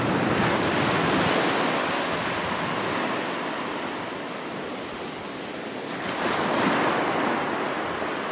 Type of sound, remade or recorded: recorded